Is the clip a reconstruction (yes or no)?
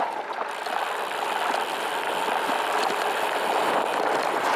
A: yes